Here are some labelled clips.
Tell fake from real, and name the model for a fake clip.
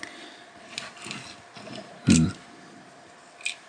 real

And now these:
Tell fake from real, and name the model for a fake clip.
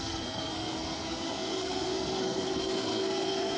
fake, codec, SNAC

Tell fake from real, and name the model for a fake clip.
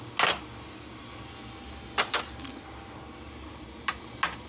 real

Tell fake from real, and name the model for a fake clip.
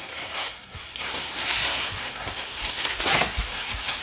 fake, codec, SNAC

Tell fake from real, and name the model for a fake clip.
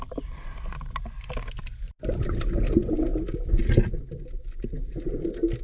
real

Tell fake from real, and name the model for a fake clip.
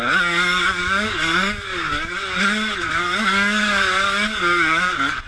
fake, codec, DAC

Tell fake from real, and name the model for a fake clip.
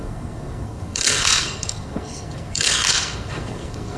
fake, codec, SNAC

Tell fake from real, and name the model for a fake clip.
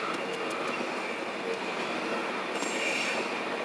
real